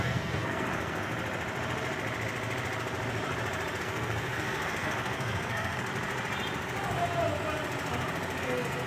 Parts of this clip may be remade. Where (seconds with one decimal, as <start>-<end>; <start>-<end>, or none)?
0.0-1.1; 3.8-5.9; 8.4-8.9

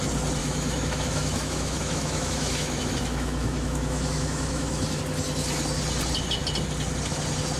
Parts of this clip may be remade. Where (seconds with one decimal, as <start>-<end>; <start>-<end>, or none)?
0.4-5.0

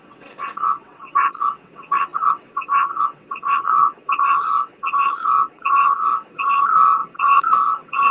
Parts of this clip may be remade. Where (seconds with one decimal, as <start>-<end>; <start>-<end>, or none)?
0.0-8.1

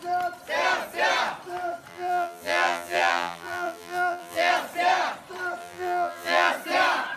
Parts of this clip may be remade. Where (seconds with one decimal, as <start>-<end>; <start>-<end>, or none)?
1.9-4.5; 5.6-6.5

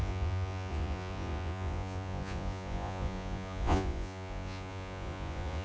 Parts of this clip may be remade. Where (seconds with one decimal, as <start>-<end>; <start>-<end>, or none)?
0.0-5.6

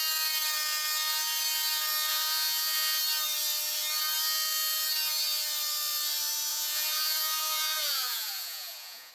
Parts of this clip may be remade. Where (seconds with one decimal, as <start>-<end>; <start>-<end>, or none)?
2.1-3.0; 6.5-9.1